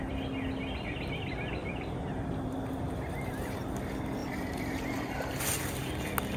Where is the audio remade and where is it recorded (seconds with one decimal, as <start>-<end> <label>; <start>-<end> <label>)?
0.0-1.6 recorded; 1.6-3.7 remade; 3.7-4.2 recorded; 4.2-5.4 remade; 5.4-6.4 recorded

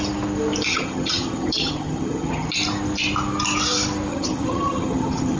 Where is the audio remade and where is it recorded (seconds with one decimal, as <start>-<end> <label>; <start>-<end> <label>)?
0.0-0.7 recorded; 0.7-2.5 remade; 2.5-4.1 recorded; 4.1-5.4 remade

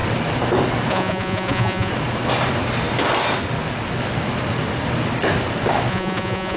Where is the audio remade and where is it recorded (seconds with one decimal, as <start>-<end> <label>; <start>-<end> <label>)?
0.0-0.9 recorded; 0.9-1.9 remade; 1.9-5.9 recorded; 5.9-6.6 remade